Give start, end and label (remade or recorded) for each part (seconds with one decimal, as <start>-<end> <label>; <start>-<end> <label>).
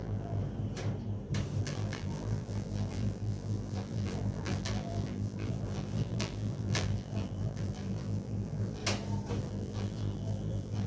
0.0-0.4 remade; 0.4-1.6 recorded; 1.6-8.8 remade; 8.8-9.4 recorded; 9.4-10.9 remade